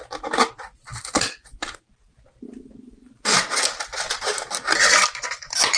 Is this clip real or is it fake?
real